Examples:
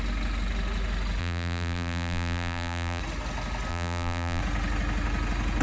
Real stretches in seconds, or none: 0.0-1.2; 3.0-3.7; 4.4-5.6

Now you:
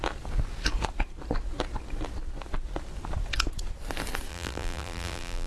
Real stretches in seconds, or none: 0.0-4.3

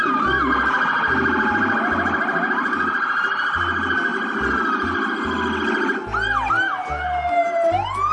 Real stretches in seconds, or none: 0.0-8.1